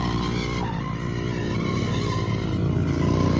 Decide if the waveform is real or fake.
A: real